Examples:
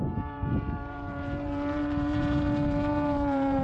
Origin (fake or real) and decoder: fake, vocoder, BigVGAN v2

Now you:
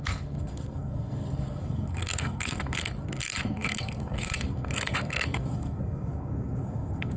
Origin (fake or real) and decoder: fake, codec, SNAC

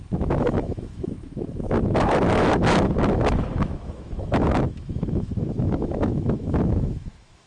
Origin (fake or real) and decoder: fake, autoencoder, DAC-VAE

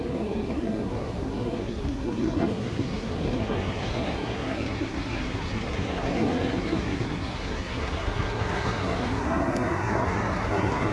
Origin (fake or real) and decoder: fake, codec, SNAC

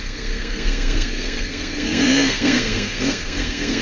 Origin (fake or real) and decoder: fake, codec, SNAC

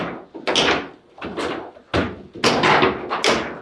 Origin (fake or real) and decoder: real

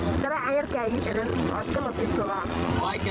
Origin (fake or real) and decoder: fake, vocoder, Vocos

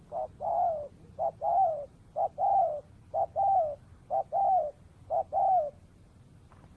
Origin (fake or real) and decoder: real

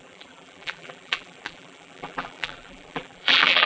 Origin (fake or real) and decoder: fake, vocoder, BigVGAN v2